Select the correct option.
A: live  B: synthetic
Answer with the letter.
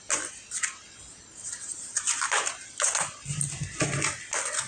A